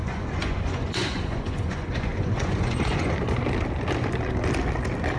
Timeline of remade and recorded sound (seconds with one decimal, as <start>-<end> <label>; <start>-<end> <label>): 0.0-3.1 remade; 3.1-5.2 recorded